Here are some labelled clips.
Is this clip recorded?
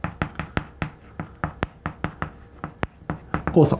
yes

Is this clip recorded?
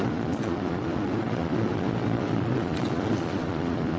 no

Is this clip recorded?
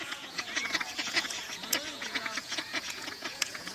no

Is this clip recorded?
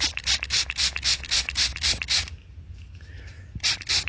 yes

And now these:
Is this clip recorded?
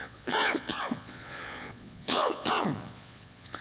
no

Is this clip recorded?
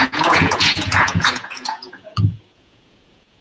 no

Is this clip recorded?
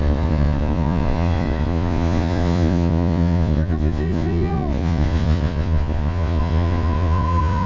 no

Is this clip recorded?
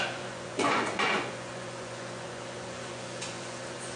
no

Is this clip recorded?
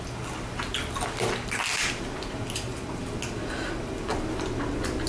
yes